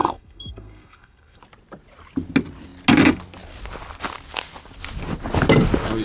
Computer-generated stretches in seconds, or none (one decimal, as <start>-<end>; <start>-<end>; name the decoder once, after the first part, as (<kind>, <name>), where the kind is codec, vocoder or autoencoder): 0.0-1.4 (codec, SNAC)